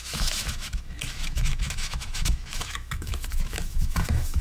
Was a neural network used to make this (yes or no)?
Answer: yes